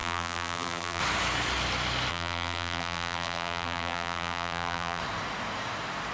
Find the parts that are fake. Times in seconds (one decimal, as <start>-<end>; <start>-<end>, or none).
0.0-1.0; 2.1-5.0